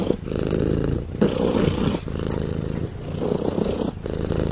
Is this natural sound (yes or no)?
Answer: yes